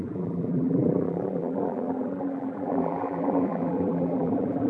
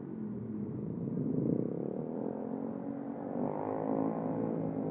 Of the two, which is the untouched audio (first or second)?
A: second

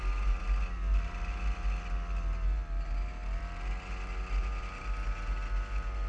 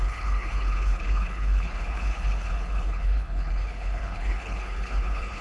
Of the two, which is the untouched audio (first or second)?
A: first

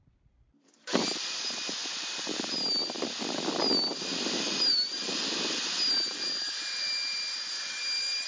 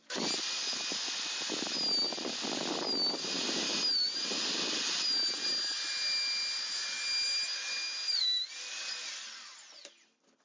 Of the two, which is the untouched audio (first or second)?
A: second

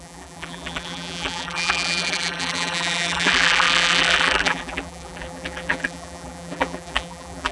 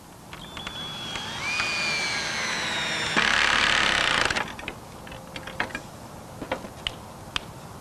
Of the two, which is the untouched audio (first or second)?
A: second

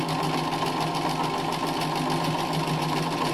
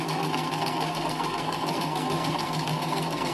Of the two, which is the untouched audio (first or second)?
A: first